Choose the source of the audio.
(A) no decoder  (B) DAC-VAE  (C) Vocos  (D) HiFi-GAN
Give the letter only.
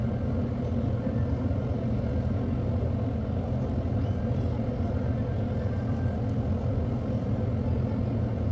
A